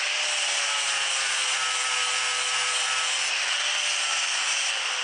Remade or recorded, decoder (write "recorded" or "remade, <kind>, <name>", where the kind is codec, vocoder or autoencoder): recorded